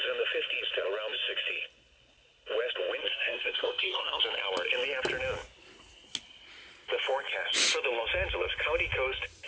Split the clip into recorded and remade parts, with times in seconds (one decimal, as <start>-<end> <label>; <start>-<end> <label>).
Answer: 0.0-3.0 recorded; 3.0-4.2 remade; 4.2-9.5 recorded